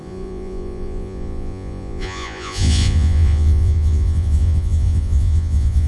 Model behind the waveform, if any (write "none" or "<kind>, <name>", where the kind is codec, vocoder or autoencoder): vocoder, Vocos